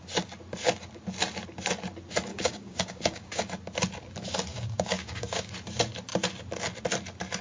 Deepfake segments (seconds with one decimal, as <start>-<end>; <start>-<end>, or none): 2.3-3.4; 4.5-5.5